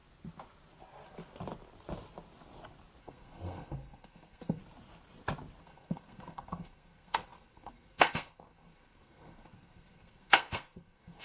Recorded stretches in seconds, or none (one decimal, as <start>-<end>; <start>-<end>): 0.0-3.0; 4.6-5.6